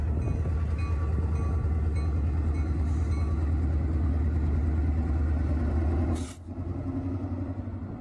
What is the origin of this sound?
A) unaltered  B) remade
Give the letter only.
A